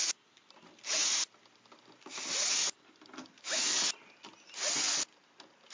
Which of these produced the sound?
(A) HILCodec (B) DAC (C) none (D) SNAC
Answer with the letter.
C